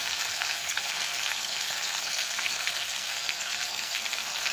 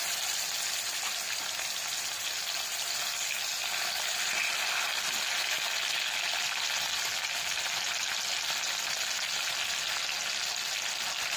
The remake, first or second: first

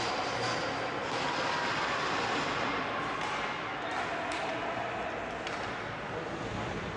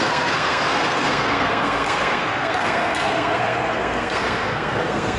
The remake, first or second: second